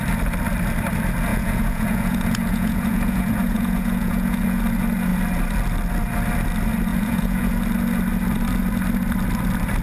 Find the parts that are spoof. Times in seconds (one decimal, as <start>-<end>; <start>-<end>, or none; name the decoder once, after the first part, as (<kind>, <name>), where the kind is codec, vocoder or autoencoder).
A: 1.3-4.6 (vocoder, Vocos); 6.9-7.5